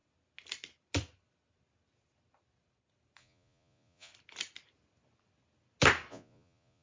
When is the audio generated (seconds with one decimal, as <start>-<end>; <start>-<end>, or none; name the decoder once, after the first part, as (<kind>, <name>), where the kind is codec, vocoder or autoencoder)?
3.2-4.1 (vocoder, Vocos); 6.1-6.8